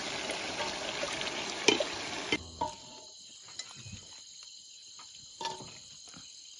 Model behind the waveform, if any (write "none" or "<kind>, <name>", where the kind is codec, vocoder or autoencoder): none